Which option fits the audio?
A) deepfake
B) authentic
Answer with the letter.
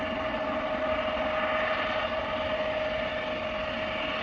B